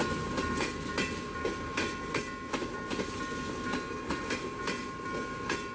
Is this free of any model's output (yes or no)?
yes